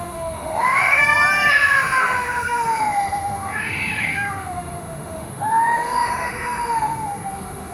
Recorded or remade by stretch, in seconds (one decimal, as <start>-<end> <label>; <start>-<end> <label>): 0.0-1.0 remade; 1.0-1.5 recorded; 1.5-7.7 remade